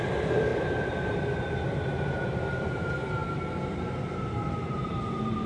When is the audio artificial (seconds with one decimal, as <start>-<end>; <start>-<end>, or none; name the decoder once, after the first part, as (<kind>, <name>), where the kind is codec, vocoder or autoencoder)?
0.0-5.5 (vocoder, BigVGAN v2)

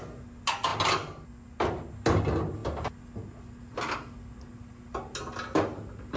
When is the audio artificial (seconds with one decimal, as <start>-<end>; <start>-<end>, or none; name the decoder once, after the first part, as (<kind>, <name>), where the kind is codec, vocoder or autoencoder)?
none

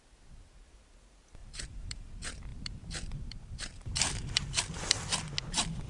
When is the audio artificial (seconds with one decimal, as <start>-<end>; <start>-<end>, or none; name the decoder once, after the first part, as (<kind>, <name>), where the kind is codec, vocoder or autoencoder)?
1.4-2.1 (vocoder, BigVGAN v2); 2.5-5.1